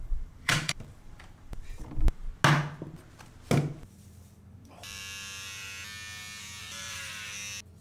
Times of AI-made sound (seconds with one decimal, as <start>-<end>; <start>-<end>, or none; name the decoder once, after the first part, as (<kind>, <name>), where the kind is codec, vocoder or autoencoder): 0.0-2.3 (vocoder, BigVGAN v2); 3.7-5.0; 6.6-7.1